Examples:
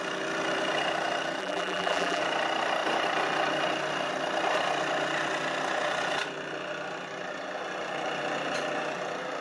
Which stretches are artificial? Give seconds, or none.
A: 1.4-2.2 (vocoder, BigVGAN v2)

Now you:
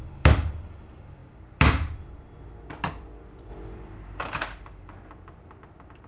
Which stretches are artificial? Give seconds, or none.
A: 0.0-3.5 (vocoder, BigVGAN v2); 4.2-6.1

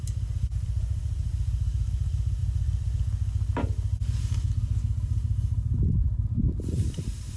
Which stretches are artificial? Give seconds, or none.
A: 0.0-2.4 (vocoder, BigVGAN v2); 4.2-7.4

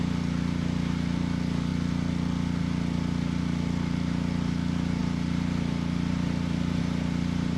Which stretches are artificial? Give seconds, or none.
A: 0.0-1.7 (vocoder, BigVGAN v2); 2.6-7.6

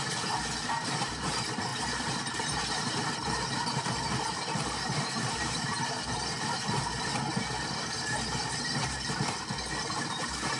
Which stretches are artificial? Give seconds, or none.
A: 0.0-10.6 (vocoder, BigVGAN v2)

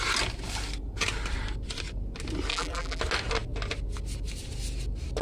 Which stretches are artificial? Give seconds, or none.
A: 2.5-3.0 (vocoder, BigVGAN v2)

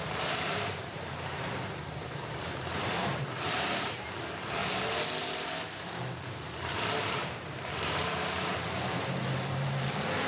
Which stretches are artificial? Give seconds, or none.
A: 0.0-4.6 (vocoder, BigVGAN v2); 5.2-10.3

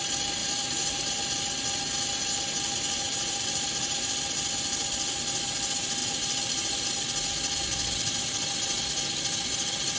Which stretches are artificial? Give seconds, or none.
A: 0.4-1.1 (vocoder, BigVGAN v2); 3.0-4.1; 6.0-6.9